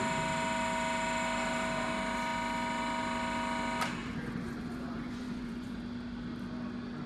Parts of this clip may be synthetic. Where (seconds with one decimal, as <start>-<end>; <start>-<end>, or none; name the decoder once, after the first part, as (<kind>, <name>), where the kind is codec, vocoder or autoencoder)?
4.0-5.8 (vocoder, Vocos)

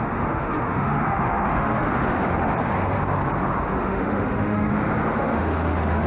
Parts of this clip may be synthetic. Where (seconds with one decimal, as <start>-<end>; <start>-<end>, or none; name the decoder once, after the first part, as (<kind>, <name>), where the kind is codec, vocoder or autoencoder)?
0.0-2.5 (autoencoder, DAC-VAE); 3.8-4.7; 5.2-6.1

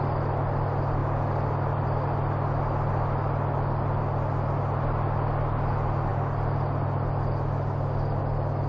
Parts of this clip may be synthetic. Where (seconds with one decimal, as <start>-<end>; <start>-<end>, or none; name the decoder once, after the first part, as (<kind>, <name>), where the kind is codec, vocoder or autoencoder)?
none

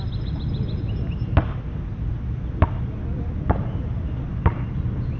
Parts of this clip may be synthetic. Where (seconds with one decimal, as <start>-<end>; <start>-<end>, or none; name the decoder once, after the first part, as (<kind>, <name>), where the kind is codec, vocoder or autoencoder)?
4.3-5.2 (vocoder, BigVGAN v2)

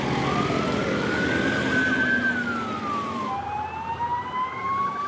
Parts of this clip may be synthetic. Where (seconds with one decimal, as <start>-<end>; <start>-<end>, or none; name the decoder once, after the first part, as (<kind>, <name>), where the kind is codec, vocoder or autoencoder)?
0.8-1.4 (codec, DAC)